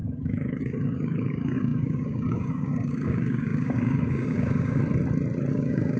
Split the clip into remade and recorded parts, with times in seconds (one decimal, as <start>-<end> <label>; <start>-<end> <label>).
0.0-4.8 remade; 4.8-5.5 recorded; 5.5-6.0 remade

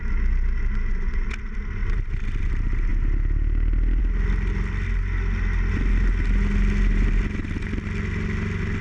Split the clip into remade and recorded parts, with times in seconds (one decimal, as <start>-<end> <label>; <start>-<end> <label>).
0.0-8.8 recorded

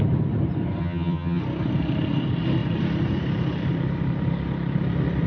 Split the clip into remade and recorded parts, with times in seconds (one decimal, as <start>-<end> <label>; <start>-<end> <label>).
0.0-0.8 recorded; 0.8-1.4 remade; 1.4-5.3 recorded

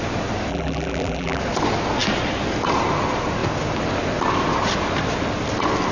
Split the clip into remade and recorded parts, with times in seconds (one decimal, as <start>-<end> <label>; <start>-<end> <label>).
0.0-0.5 recorded; 0.5-1.4 remade; 1.4-5.9 recorded

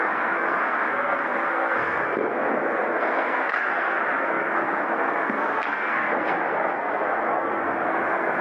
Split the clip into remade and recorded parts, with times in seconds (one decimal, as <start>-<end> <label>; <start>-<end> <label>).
0.0-8.4 remade

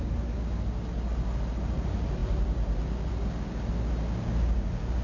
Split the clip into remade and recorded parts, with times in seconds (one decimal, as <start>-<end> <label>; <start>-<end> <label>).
0.0-5.0 recorded

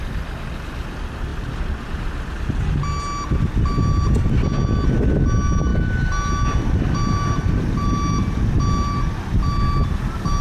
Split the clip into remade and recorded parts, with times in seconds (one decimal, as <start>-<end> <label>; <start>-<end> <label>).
0.0-10.4 recorded